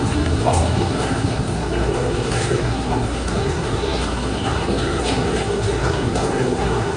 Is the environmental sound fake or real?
fake